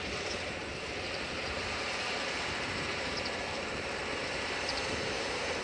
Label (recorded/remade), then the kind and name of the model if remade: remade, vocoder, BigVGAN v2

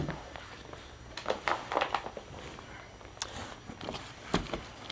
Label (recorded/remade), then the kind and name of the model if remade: recorded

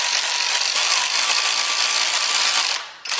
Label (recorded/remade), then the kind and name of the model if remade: recorded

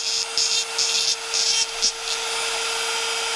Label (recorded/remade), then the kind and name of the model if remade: recorded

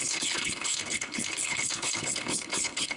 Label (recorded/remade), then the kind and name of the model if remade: remade, codec, HILCodec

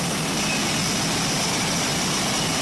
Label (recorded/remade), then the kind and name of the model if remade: recorded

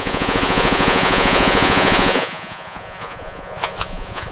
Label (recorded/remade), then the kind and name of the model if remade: remade, vocoder, Vocos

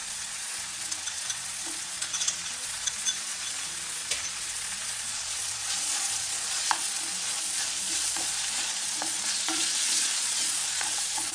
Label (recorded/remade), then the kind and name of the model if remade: remade, vocoder, Vocos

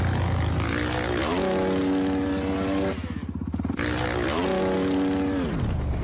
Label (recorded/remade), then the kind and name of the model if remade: recorded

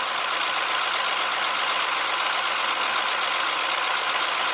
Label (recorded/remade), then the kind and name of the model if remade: recorded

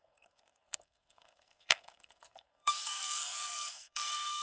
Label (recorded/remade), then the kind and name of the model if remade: remade, codec, SNAC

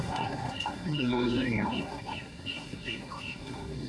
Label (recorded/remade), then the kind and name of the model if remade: remade, codec, SNAC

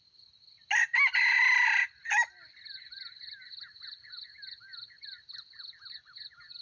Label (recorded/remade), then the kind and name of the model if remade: recorded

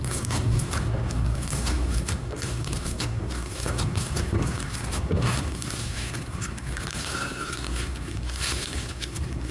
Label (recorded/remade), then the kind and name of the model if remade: remade, codec, SNAC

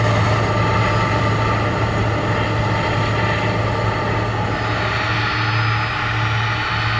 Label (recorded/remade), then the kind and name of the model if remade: recorded